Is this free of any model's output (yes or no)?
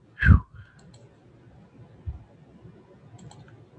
yes